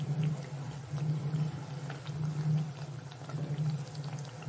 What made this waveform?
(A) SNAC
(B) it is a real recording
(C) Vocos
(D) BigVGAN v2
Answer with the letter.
B